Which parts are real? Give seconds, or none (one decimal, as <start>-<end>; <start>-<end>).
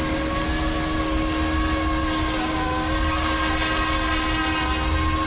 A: 0.0-2.0; 3.5-5.3